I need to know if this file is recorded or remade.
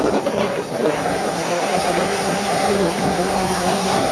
remade